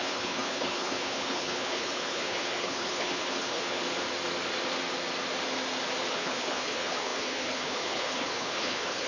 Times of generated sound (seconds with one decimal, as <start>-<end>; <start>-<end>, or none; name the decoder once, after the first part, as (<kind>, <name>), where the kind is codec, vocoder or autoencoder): 0.0-3.8 (codec, HILCodec); 6.1-9.1